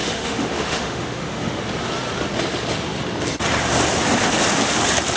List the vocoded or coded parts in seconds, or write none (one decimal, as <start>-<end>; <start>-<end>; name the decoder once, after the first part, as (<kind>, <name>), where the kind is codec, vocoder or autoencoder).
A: 0.0-1.6 (autoencoder, DAC-VAE)